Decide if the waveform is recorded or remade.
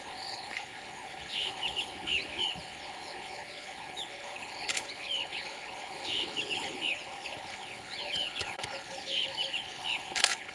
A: remade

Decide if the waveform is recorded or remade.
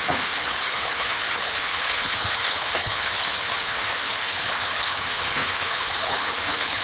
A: remade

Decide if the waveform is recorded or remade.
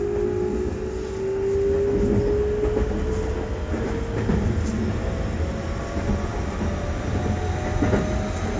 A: recorded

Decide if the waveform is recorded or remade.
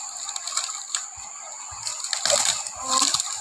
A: recorded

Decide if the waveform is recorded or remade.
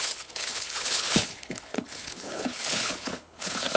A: remade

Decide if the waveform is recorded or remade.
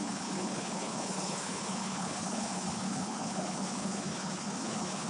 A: remade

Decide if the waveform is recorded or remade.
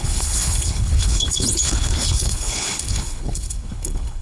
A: remade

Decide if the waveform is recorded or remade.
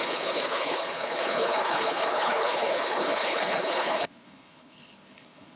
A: remade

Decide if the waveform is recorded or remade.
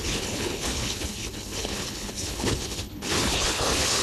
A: remade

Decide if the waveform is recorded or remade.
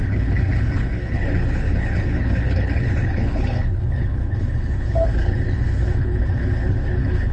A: remade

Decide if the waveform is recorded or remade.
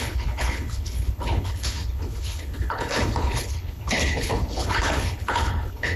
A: remade